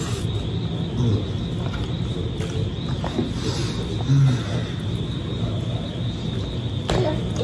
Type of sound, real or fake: real